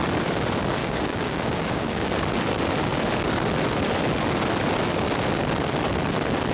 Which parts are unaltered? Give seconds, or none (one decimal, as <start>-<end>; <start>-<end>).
0.0-0.8; 2.1-6.5